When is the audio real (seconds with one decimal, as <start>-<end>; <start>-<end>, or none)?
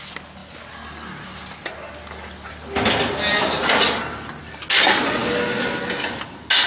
0.0-6.7